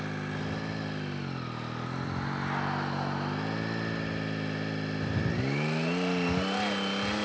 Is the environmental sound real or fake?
real